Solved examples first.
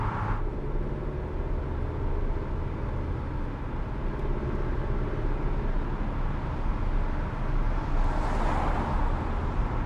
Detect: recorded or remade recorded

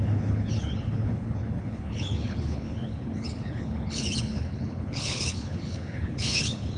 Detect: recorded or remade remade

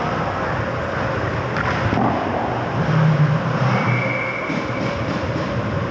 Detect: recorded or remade recorded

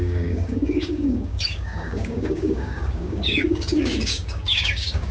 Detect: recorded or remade remade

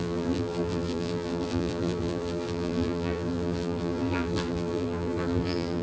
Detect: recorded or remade remade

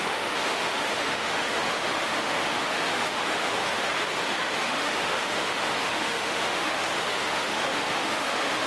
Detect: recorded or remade remade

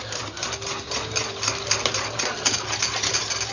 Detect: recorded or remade recorded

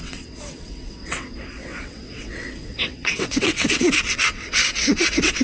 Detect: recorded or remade remade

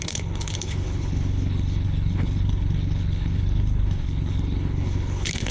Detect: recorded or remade remade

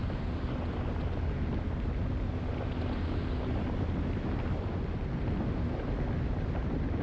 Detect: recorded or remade recorded